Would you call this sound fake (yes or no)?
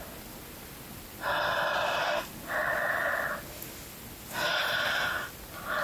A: no